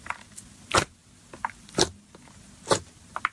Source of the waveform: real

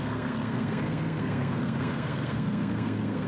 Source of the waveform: fake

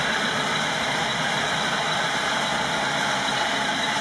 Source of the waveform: fake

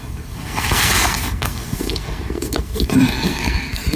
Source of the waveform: fake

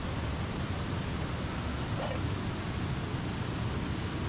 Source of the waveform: real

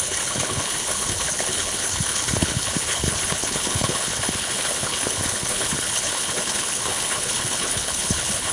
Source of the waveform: fake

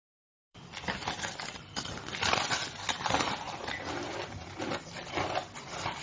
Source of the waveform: fake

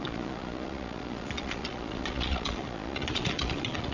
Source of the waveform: fake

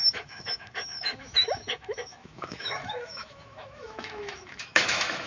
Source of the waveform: fake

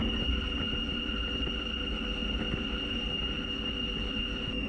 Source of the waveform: real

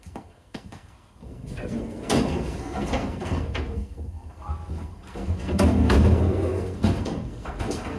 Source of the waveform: fake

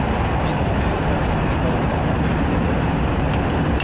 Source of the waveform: fake